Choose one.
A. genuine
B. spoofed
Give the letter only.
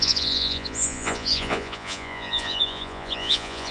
B